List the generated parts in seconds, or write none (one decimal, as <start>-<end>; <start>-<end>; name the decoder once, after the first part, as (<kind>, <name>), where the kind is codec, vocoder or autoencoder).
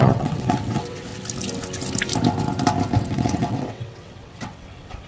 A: 0.0-1.1 (vocoder, WaveNeXt); 3.0-5.1